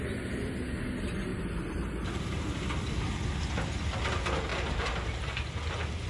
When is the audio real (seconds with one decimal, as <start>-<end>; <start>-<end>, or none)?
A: 0.0-1.3; 2.6-4.5; 5.5-6.1